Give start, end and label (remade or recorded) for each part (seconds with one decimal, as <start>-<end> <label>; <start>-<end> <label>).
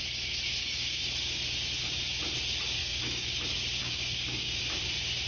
0.0-0.6 recorded; 0.6-1.1 remade; 1.1-2.8 recorded; 2.8-3.3 remade; 3.3-3.8 recorded; 3.8-4.6 remade; 4.6-5.3 recorded